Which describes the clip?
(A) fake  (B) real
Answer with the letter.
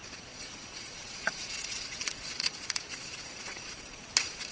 A